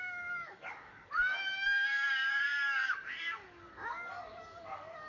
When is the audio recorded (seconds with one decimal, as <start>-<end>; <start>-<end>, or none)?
none